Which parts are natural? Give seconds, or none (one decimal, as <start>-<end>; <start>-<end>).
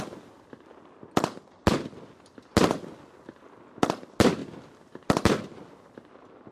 0.0-6.5